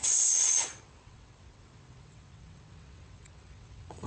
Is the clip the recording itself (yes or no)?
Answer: no